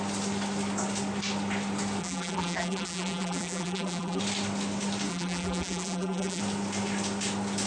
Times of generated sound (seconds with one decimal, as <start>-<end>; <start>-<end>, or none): 2.0-4.2; 5.1-6.4